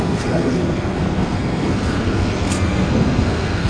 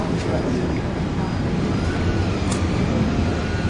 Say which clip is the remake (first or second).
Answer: first